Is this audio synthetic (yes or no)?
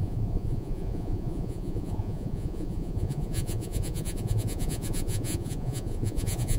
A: yes